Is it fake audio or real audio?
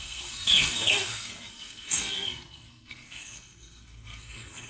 fake